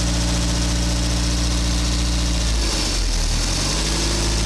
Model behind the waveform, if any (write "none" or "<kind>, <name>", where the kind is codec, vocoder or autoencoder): none